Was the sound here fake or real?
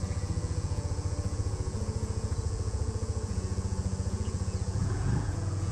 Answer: fake